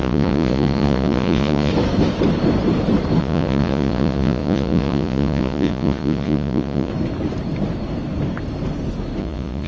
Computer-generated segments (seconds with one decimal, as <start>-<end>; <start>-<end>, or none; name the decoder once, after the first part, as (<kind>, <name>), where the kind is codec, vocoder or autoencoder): 0.0-1.7 (vocoder, Vocos); 3.2-6.9; 9.2-9.7